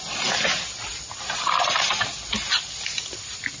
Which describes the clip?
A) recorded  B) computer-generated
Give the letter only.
A